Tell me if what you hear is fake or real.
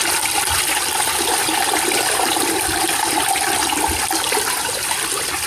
fake